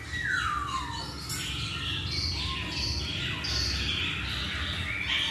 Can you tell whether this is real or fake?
real